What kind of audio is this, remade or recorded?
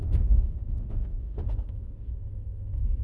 remade